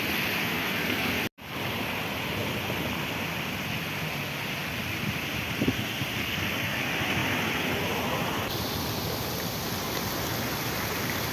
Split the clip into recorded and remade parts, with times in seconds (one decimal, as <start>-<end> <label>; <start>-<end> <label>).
0.0-0.4 recorded; 0.4-1.1 remade; 1.1-6.2 recorded; 6.2-6.8 remade; 6.8-11.3 recorded